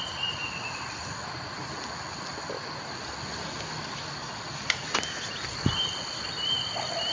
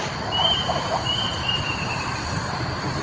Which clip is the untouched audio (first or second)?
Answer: first